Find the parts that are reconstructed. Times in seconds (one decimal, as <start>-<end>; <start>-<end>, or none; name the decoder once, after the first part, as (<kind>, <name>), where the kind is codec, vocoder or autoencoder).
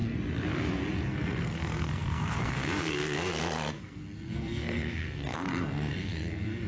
1.1-6.7 (codec, SNAC)